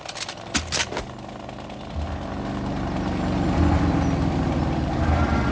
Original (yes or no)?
yes